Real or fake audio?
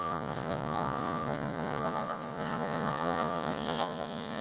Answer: fake